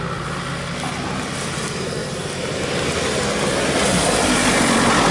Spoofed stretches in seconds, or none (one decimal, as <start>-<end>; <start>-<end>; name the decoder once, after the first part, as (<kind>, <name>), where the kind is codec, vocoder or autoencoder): 2.0-2.7 (vocoder, BigVGAN v2)